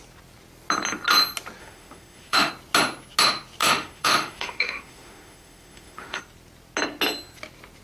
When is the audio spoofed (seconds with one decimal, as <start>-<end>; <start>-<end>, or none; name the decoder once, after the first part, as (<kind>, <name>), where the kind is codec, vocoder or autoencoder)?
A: 1.6-2.5 (autoencoder, DAC-VAE); 3.6-6.2